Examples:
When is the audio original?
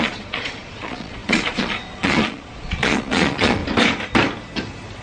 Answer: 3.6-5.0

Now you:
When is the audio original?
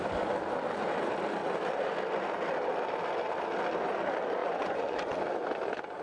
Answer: 0.0-4.4; 5.2-6.0